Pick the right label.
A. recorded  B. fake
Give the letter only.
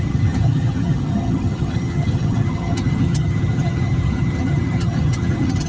B